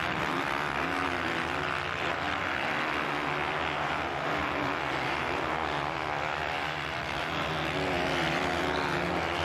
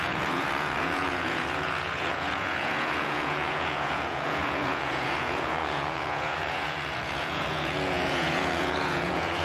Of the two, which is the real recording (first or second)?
first